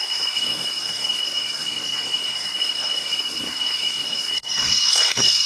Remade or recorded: remade